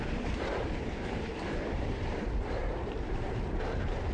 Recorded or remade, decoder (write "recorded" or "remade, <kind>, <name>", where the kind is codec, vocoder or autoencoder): remade, vocoder, BigVGAN v2